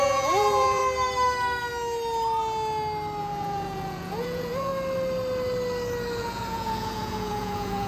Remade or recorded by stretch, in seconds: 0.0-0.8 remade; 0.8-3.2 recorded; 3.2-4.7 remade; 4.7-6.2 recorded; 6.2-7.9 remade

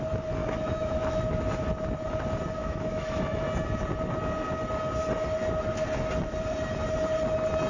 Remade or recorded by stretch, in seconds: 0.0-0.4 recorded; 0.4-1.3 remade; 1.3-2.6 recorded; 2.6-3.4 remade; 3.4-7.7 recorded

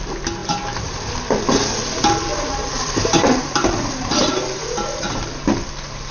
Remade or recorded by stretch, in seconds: 0.0-0.4 recorded; 0.4-1.1 remade; 1.1-2.3 recorded; 2.3-5.1 remade; 5.1-6.1 recorded

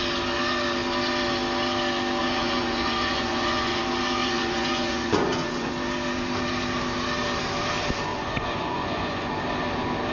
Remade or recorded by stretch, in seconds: 0.0-2.2 recorded; 2.2-3.8 remade; 3.8-4.2 recorded; 4.2-5.7 remade; 5.7-8.1 recorded; 8.1-9.3 remade; 9.3-10.1 recorded